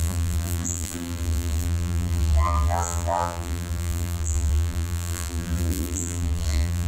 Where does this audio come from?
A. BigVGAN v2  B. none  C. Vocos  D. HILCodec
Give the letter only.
A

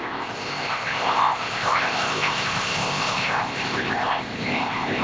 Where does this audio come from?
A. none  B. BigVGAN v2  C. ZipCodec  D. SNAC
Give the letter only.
C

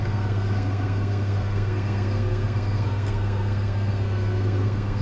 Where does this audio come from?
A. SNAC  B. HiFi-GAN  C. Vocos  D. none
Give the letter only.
A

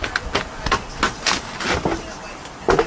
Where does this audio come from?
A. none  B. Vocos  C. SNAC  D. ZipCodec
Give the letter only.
A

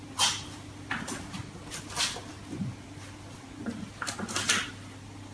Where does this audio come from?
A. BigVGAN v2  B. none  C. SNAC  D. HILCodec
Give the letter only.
B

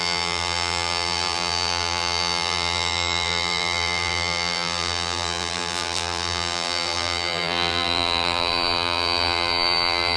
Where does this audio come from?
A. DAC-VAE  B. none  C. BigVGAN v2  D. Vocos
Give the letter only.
C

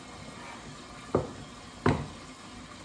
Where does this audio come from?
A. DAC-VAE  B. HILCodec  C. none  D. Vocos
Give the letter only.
C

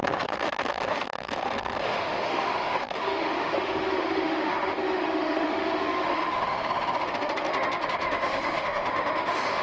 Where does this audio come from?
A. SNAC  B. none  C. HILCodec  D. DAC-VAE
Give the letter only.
D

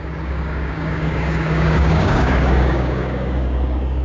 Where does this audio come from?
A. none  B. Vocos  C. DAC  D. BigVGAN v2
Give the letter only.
C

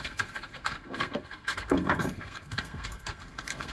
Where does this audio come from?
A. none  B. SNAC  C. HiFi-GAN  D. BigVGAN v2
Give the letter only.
B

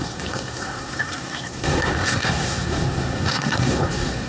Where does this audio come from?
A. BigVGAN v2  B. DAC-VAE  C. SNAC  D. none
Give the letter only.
C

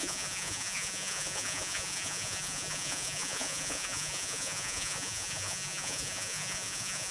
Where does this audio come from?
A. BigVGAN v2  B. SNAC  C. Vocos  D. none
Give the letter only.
C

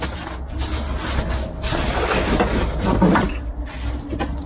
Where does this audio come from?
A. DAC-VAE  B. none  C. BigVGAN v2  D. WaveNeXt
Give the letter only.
B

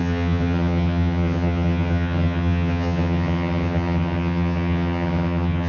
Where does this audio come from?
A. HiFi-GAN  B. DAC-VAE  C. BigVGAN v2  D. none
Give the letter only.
A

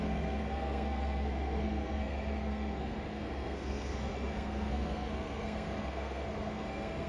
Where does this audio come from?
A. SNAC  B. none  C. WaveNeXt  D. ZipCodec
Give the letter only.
A